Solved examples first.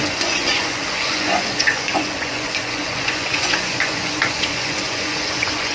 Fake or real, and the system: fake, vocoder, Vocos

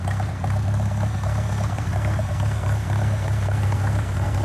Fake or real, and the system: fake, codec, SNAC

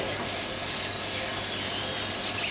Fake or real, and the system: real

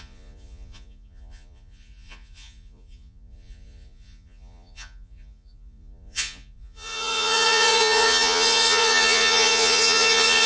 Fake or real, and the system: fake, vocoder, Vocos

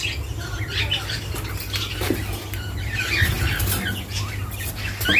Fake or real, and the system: real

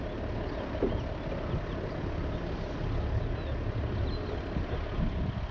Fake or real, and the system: real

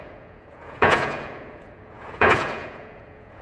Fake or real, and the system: fake, vocoder, Vocos